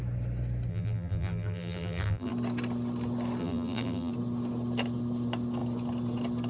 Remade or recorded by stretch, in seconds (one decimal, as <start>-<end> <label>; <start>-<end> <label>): 0.0-0.7 recorded; 0.7-2.3 remade; 2.3-3.4 recorded; 3.4-4.1 remade; 4.1-6.5 recorded